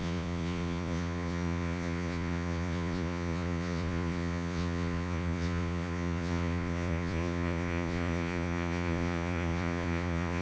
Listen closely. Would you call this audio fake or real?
fake